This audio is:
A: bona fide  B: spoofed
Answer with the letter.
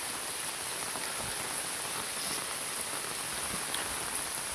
A